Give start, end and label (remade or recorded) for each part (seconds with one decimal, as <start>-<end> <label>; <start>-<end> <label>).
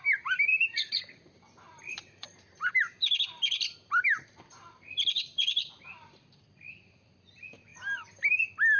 0.0-0.5 recorded; 0.5-2.4 remade; 2.4-3.0 recorded; 3.0-6.4 remade; 6.4-8.8 recorded